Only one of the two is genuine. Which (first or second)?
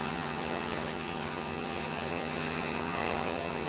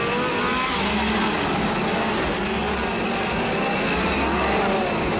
second